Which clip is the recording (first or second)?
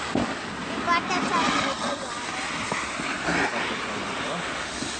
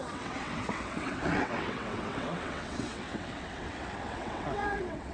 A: first